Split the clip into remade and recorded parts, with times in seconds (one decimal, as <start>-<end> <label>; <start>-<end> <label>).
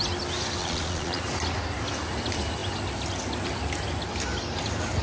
0.0-0.6 recorded; 0.6-1.2 remade; 1.2-5.0 recorded